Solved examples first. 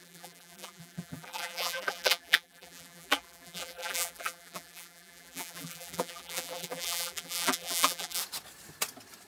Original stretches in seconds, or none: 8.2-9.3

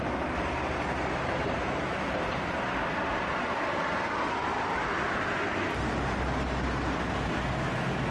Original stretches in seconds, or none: 0.0-8.1

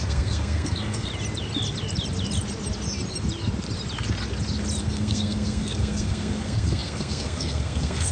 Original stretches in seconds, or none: 1.1-4.8

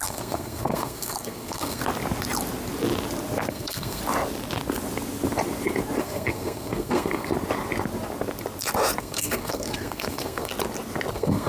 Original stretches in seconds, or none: 1.8-3.5; 4.0-6.0; 7.3-9.0; 10.5-11.1

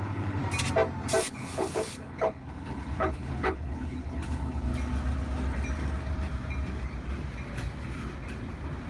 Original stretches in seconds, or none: 0.4-1.2; 4.7-8.9

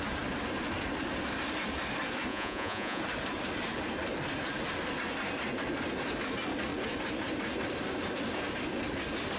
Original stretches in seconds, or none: 0.0-2.3; 3.0-9.4

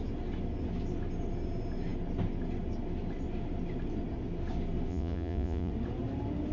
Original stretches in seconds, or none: 0.0-4.9; 5.7-6.5

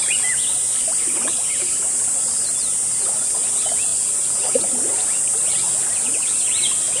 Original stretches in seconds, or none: 0.0-7.0